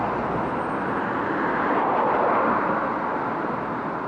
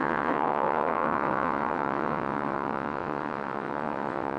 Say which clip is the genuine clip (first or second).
first